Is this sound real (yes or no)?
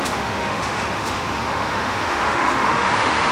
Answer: no